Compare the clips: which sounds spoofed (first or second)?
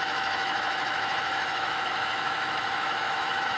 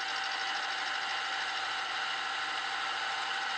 first